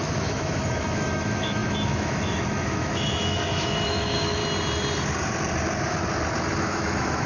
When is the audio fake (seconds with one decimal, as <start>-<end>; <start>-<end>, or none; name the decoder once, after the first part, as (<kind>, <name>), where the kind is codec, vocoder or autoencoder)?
0.0-4.4 (autoencoder, DAC-VAE); 6.6-7.3

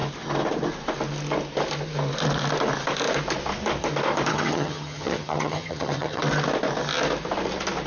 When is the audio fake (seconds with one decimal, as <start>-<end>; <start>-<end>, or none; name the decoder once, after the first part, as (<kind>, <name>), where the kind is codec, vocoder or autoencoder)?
4.3-6.2 (vocoder, HiFi-GAN)

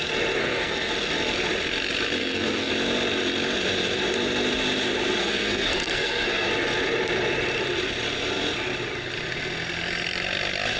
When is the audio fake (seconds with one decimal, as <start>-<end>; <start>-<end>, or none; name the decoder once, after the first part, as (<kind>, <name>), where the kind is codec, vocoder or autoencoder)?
0.4-0.9 (codec, SNAC); 2.2-2.7; 5.2-6.5

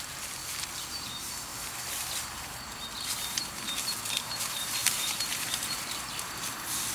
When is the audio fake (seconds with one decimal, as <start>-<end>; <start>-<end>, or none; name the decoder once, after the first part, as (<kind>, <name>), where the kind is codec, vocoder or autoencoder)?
0.0-0.4 (vocoder, BigVGAN v2); 1.1-1.5; 2.2-6.9